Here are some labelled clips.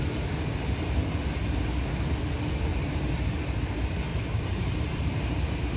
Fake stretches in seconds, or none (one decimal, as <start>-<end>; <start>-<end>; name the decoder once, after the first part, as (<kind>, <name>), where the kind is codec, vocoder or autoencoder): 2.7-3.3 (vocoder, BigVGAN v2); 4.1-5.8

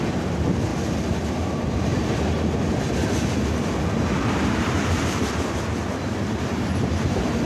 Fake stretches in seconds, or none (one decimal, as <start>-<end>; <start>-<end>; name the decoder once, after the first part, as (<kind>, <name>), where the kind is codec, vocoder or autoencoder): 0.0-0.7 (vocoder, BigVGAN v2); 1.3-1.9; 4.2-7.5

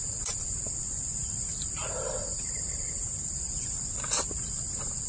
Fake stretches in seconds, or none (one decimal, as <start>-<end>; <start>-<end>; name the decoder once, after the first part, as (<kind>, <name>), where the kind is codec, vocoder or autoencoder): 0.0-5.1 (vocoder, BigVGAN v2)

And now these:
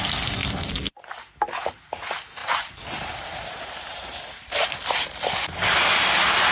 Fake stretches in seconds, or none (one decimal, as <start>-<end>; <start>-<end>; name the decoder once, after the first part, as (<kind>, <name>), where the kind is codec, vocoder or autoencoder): 2.4-4.5 (vocoder, BigVGAN v2)

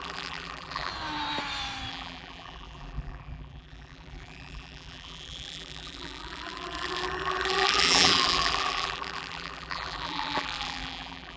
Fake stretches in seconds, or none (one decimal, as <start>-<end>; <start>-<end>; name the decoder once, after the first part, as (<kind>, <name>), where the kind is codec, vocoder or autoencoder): 0.0-0.9 (vocoder, BigVGAN v2); 1.9-11.4